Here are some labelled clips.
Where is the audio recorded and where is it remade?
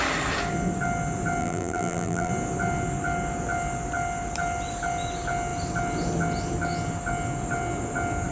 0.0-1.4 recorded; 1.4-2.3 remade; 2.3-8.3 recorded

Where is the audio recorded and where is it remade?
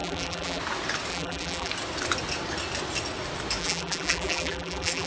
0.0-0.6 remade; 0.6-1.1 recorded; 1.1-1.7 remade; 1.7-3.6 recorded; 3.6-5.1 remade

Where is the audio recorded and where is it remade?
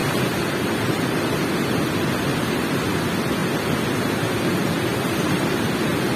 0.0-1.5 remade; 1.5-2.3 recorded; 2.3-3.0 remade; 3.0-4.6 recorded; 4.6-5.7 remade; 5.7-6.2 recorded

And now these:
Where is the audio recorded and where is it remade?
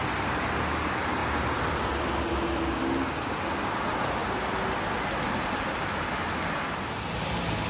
0.0-1.2 recorded; 1.2-1.9 remade; 1.9-7.7 recorded